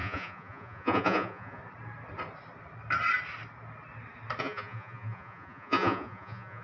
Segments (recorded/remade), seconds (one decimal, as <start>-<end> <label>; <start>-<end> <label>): 0.0-1.6 remade; 1.6-4.4 recorded; 4.4-6.6 remade